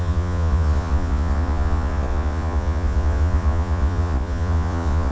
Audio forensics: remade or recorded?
remade